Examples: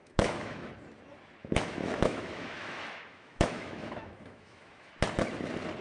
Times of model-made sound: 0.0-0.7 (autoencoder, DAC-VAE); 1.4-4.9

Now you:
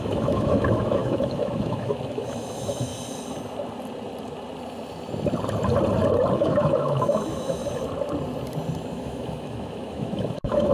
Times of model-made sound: 0.0-2.9 (autoencoder, DAC-VAE); 6.3-7.6; 8.9-10.7

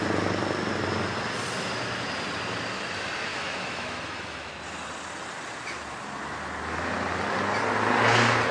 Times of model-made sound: 3.3-4.5 (autoencoder, DAC-VAE)

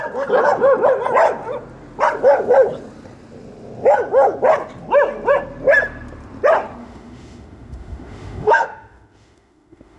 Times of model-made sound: 6.8-10.0 (autoencoder, DAC-VAE)

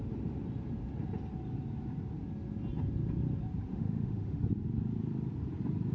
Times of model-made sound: 3.7-4.4 (autoencoder, DAC-VAE)

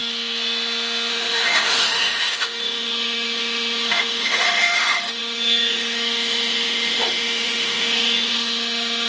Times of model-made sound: 1.1-9.1 (autoencoder, DAC-VAE)

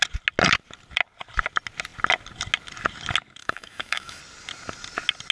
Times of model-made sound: 3.4-4.2 (autoencoder, DAC-VAE)

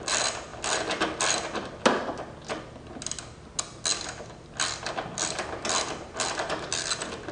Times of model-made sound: none